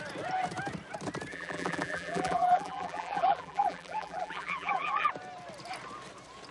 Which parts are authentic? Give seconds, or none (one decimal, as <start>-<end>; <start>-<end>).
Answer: 0.0-1.3; 5.1-6.5